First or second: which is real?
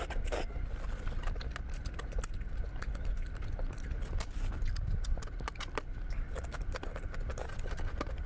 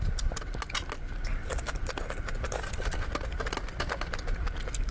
second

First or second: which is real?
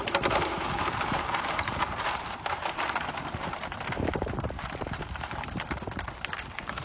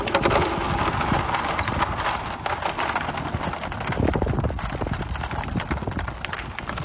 second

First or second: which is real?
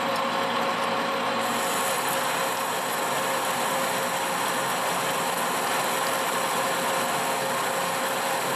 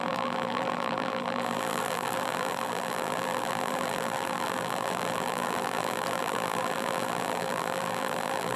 first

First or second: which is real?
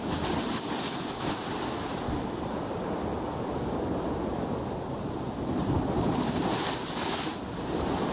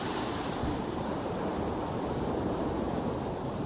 first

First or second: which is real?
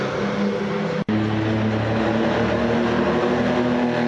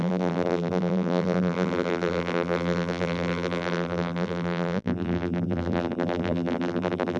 first